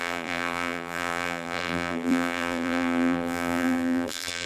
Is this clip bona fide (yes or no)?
no